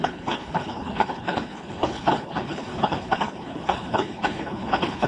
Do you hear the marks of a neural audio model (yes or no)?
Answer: yes